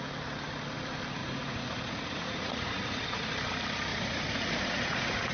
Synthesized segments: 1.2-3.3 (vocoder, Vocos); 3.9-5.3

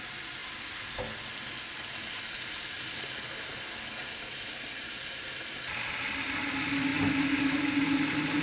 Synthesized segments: none

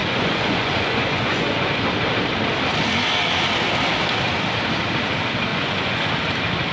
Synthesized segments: 0.0-1.7 (vocoder, Vocos); 5.5-6.1

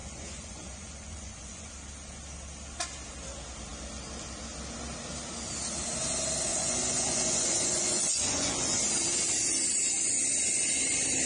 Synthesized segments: 0.0-1.7 (vocoder, Vocos); 6.5-8.8

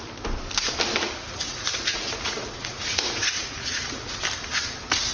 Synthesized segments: 1.2-4.2 (vocoder, Vocos)

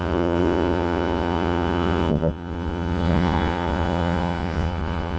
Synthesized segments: 0.0-5.2 (vocoder, Vocos)

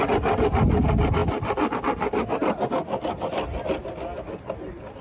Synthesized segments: none

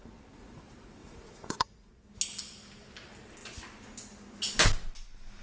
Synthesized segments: 0.0-0.5 (vocoder, Vocos); 1.0-1.9